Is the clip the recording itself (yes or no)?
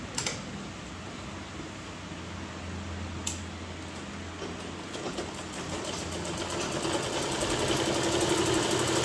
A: yes